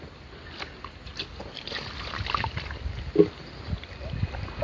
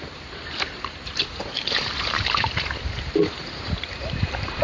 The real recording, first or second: first